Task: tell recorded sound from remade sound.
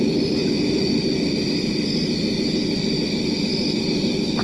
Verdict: recorded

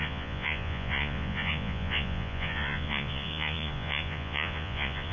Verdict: remade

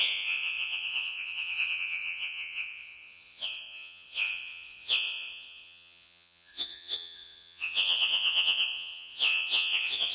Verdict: remade